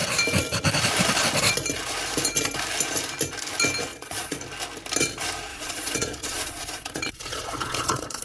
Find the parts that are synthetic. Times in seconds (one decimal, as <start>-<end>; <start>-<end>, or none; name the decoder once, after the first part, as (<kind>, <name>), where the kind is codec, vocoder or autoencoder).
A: 3.9-4.4 (vocoder, Vocos); 5.5-8.2